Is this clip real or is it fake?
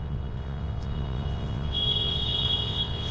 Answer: fake